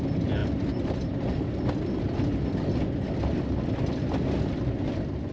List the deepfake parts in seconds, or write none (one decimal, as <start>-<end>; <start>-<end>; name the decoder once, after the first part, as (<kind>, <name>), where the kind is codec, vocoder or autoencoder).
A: none